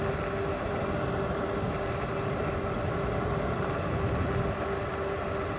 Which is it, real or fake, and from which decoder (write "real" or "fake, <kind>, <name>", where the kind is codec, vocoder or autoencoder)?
real